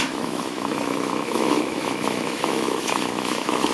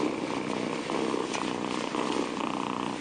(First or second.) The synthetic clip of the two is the first